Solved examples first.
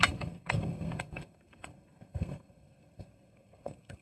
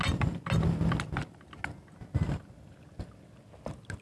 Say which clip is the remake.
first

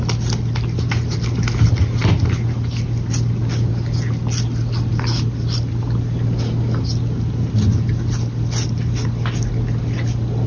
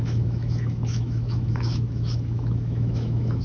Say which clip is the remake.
second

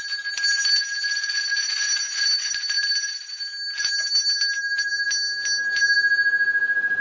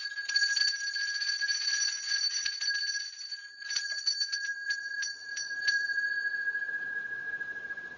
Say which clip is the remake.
second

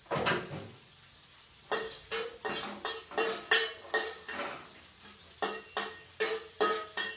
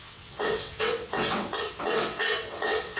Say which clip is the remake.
second